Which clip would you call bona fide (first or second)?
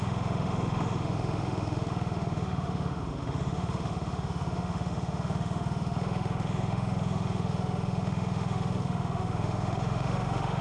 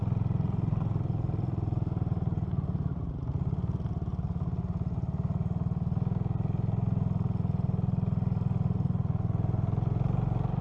second